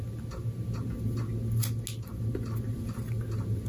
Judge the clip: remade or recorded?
recorded